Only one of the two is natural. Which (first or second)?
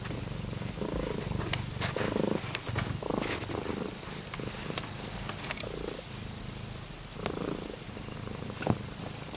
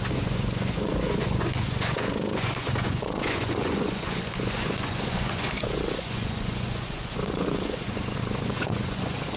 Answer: first